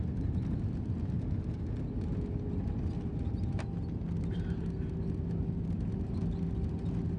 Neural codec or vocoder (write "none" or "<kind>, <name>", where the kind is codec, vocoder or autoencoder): none